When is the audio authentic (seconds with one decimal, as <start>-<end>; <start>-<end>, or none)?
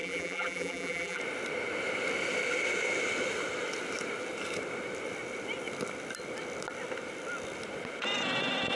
1.2-8.8